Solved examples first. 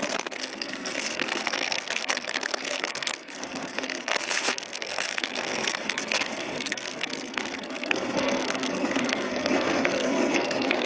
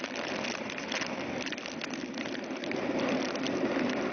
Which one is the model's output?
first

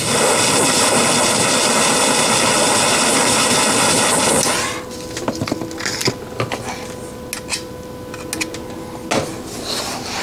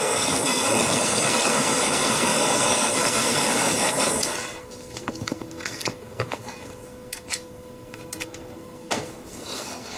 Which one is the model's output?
second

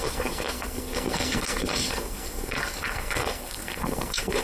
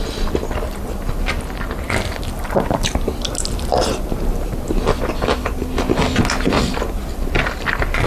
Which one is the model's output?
first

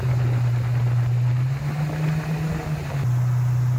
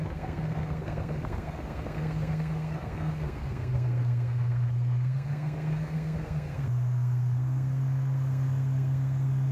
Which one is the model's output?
second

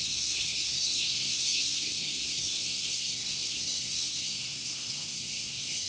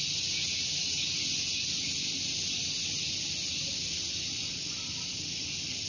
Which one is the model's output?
first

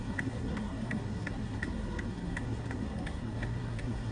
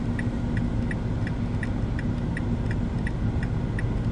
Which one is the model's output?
first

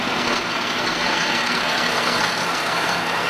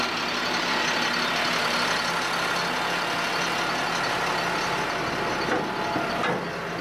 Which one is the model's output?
first